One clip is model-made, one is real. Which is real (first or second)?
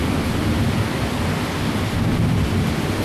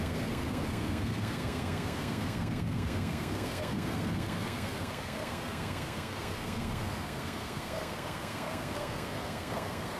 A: first